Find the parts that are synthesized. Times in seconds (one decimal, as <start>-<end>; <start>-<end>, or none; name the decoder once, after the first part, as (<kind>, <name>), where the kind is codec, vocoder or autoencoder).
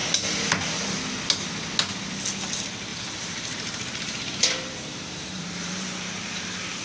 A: 2.9-5.9 (vocoder, BigVGAN v2)